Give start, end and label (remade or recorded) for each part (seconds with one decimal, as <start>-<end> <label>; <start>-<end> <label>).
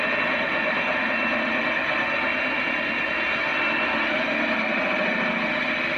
0.0-3.5 recorded; 3.5-4.2 remade; 4.2-6.0 recorded